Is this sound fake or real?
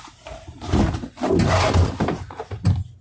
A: real